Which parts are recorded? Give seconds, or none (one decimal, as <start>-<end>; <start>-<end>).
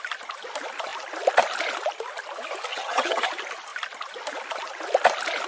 0.0-2.7; 3.3-5.5